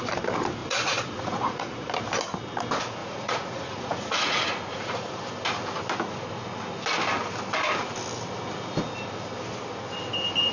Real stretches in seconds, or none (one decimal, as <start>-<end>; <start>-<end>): 0.0-0.6; 1.9-3.0; 5.2-10.5